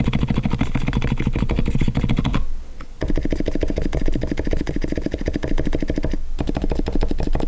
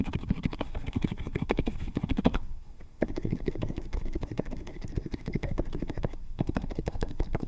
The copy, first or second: second